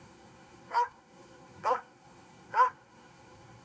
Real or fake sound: fake